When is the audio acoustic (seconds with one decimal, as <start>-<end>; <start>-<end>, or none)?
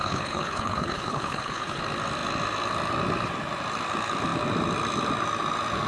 1.8-5.9